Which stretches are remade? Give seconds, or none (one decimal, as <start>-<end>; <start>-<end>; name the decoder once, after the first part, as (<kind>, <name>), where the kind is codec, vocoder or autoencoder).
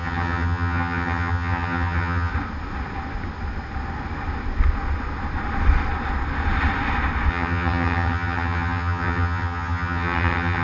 0.0-2.3 (vocoder, HiFi-GAN); 7.3-10.6